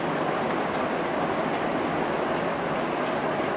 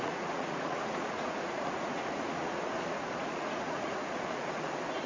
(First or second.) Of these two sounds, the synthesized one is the second